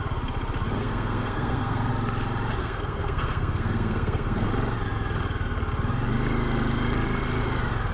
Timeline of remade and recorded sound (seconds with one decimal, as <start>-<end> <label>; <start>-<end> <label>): 0.0-0.8 recorded; 0.8-1.9 remade; 1.9-2.6 recorded; 2.6-4.5 remade; 4.5-7.9 recorded